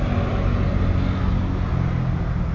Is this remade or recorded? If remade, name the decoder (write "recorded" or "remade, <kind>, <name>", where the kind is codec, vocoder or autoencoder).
recorded